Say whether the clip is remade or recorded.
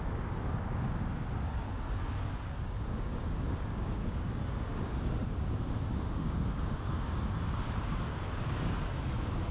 remade